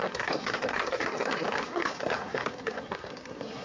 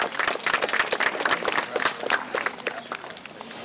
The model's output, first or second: first